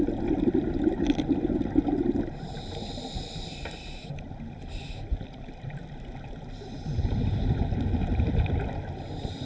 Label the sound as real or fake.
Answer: real